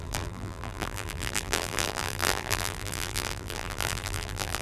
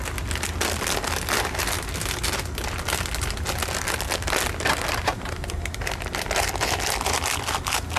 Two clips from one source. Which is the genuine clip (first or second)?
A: second